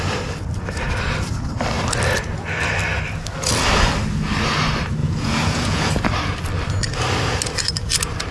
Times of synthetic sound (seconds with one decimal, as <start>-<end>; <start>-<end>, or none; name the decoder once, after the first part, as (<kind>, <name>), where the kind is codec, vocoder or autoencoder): 5.0-5.9 (vocoder, Vocos)